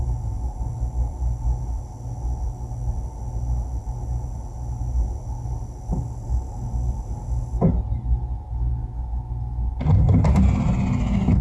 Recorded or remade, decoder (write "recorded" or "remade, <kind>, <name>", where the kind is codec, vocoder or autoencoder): recorded